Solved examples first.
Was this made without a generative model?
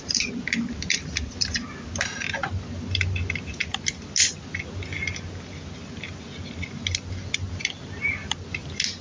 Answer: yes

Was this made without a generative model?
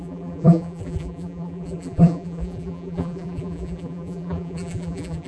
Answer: no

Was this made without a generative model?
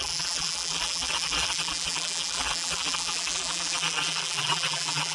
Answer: no